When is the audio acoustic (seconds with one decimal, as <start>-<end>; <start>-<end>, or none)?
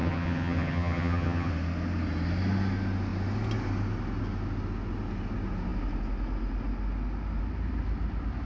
1.5-8.5